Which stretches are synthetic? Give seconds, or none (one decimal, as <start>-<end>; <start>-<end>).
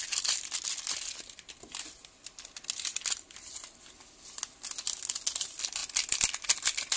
none